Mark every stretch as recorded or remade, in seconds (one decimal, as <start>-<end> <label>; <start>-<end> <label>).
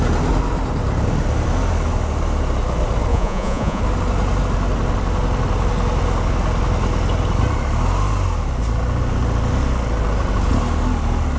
0.0-3.1 recorded; 3.1-3.8 remade; 3.8-11.4 recorded